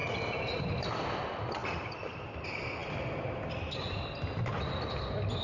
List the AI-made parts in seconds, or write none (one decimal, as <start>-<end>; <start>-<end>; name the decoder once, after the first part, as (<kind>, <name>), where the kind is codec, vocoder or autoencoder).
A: none